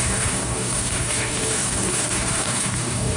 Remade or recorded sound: remade